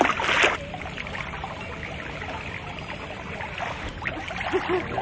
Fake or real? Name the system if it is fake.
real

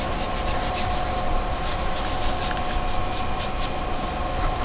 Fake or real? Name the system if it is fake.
real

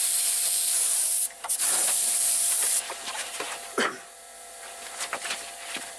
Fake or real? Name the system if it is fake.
fake, vocoder, BigVGAN v2